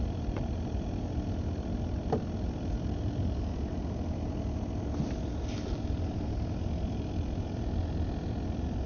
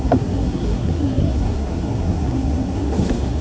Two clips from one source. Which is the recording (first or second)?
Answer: first